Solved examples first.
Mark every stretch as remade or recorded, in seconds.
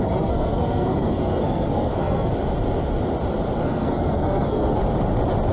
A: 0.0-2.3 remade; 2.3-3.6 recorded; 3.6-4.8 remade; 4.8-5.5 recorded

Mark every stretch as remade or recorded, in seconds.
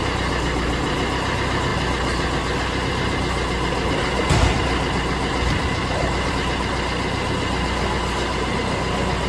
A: 0.0-9.3 recorded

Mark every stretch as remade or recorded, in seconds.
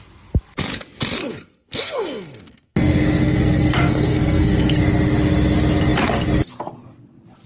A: 0.0-1.2 recorded; 1.2-4.8 remade; 4.8-7.5 recorded